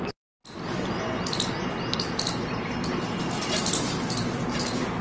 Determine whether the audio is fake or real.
real